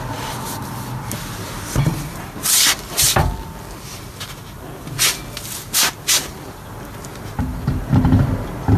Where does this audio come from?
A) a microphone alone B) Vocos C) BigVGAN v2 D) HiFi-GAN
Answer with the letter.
A